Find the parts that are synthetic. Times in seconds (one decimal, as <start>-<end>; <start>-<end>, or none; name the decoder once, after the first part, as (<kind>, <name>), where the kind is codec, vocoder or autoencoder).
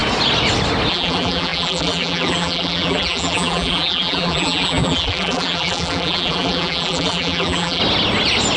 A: 0.9-7.8 (vocoder, BigVGAN v2)